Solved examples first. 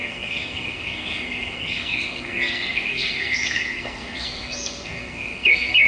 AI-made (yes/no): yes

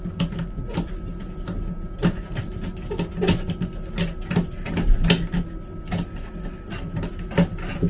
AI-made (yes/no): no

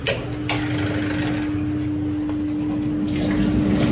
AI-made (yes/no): no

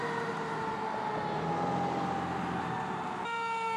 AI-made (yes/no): no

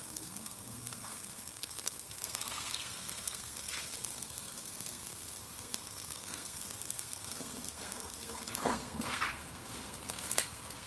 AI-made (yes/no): yes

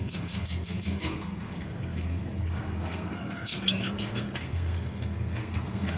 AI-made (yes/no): yes